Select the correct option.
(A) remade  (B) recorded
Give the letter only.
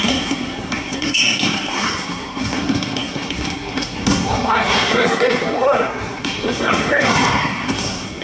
A